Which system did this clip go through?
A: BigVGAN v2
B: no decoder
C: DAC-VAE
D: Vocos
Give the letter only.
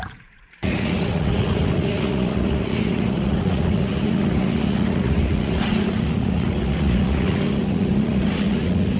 D